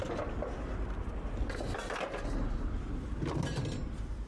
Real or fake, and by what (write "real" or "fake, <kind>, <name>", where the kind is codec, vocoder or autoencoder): real